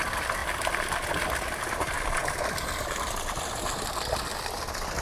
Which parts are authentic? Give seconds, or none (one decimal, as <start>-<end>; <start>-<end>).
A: 0.0-5.0